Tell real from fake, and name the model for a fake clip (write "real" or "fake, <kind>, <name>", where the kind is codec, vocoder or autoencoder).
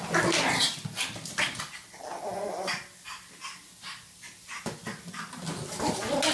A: real